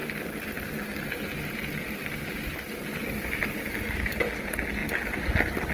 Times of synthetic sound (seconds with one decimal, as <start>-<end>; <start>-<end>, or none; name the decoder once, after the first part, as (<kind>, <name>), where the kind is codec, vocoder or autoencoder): none